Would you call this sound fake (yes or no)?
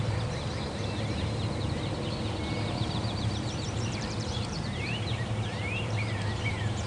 yes